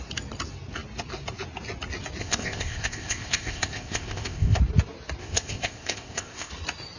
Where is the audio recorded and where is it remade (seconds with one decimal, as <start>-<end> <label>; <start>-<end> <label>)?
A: 0.0-2.2 recorded; 2.2-4.6 remade; 4.6-5.2 recorded; 5.2-6.5 remade; 6.5-7.0 recorded